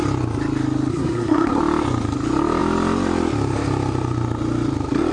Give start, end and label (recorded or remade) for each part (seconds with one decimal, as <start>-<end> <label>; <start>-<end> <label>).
0.0-0.9 recorded; 0.9-1.6 remade; 1.6-5.1 recorded